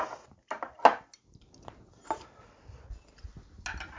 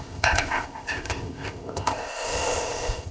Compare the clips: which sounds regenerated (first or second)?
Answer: second